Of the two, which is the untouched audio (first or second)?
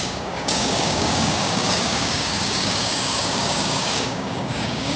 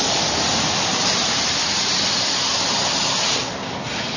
second